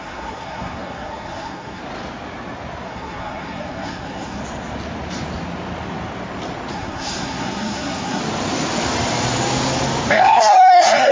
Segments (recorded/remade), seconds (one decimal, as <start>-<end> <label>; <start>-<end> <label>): 0.0-1.8 remade; 1.8-2.9 recorded; 2.9-4.4 remade; 4.4-6.7 recorded; 6.7-8.2 remade; 8.2-10.1 recorded; 10.1-11.1 remade